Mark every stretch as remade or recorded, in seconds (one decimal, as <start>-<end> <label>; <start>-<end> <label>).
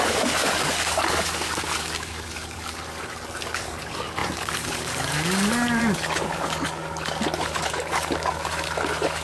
0.0-9.2 remade